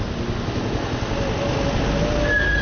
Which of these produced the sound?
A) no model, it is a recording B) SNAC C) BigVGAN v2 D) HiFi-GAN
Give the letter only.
A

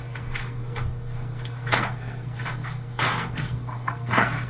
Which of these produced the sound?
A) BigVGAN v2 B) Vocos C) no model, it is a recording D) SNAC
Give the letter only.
D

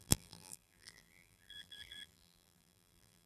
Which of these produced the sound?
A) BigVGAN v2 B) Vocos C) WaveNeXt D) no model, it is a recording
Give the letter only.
A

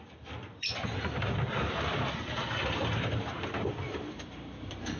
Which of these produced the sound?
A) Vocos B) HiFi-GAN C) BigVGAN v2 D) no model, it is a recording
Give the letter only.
C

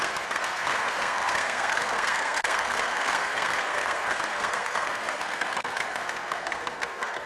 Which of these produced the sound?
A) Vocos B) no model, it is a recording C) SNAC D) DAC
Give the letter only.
C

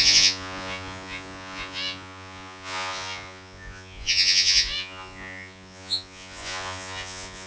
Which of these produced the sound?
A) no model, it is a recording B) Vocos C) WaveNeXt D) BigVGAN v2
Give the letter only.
B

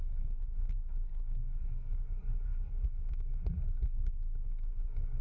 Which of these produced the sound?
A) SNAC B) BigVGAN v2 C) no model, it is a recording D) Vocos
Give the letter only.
A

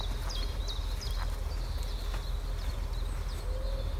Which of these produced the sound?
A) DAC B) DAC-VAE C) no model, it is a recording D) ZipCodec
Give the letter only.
C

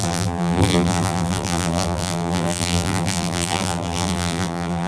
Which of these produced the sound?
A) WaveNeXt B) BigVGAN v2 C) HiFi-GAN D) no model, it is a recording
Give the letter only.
B